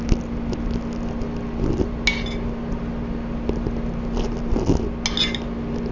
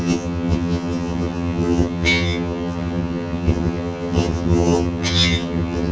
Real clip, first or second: first